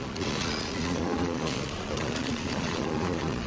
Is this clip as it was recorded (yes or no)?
no